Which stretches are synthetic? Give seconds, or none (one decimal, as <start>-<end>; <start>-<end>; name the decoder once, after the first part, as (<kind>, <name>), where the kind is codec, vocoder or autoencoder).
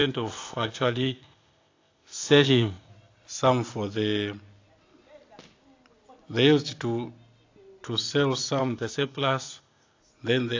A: 0.0-2.9 (codec, ZipCodec); 8.6-10.0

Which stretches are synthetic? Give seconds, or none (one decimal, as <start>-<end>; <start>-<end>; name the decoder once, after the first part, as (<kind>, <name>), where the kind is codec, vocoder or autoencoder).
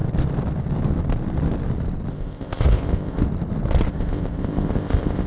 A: 2.1-3.2 (codec, ZipCodec); 3.9-5.3